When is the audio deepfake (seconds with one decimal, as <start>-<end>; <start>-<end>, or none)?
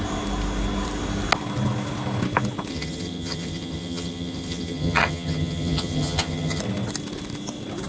2.7-6.6